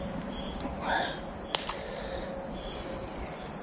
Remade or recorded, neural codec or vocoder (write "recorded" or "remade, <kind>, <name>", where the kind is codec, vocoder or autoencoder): recorded